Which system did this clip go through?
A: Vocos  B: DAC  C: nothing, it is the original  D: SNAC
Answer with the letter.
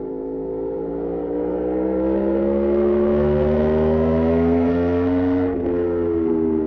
D